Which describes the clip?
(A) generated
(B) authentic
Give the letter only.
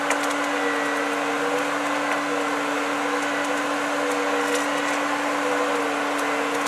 B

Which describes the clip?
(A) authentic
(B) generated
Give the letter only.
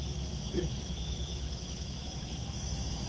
B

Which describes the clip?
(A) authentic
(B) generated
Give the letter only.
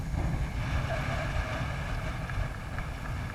A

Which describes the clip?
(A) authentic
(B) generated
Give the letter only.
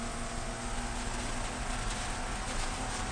A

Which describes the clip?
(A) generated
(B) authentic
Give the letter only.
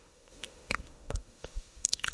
A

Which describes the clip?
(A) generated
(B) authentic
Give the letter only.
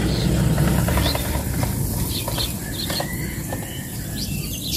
B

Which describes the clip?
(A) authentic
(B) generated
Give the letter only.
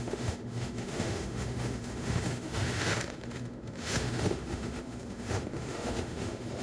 B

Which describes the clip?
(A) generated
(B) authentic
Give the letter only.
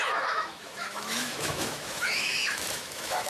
A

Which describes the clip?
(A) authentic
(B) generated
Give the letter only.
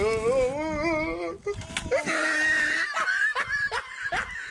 A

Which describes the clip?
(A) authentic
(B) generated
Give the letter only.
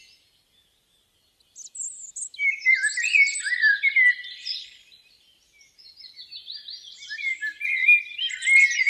A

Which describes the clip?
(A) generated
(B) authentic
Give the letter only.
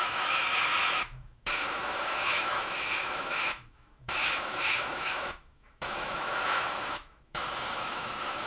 A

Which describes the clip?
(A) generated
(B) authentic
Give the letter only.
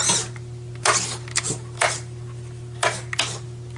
B